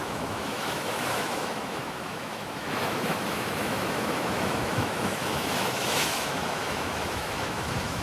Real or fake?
fake